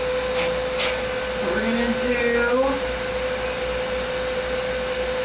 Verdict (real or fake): real